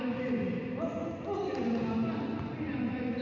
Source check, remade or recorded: recorded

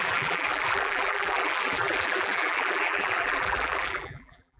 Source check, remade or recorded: remade